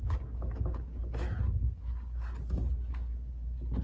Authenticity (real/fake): real